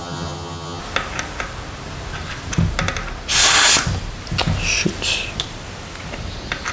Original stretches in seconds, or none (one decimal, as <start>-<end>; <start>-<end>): 0.8-6.7